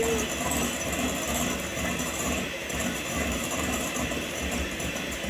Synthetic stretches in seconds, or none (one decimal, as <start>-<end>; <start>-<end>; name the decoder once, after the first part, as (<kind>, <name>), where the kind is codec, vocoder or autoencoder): 1.7-5.3 (vocoder, BigVGAN v2)